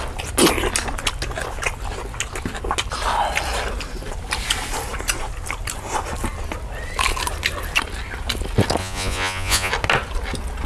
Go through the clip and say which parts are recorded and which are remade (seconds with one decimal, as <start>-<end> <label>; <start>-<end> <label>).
0.0-8.8 recorded; 8.8-9.7 remade; 9.7-10.7 recorded